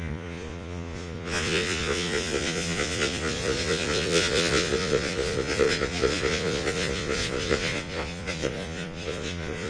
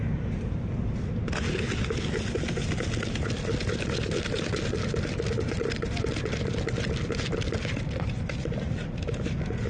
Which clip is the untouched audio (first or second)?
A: second